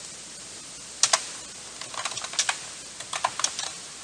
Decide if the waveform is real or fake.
real